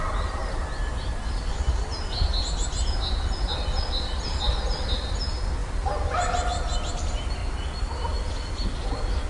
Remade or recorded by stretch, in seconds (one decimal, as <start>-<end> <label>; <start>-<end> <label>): 0.0-0.4 recorded; 0.4-1.7 remade; 1.7-9.3 recorded